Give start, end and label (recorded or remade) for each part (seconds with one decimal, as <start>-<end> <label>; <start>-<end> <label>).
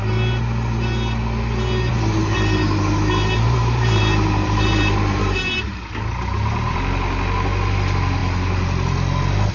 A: 0.0-1.9 recorded; 1.9-5.7 remade; 5.7-9.5 recorded